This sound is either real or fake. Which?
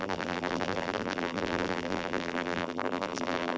fake